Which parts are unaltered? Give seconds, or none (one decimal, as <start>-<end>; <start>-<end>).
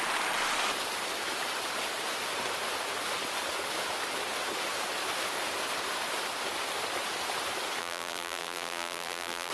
0.0-7.8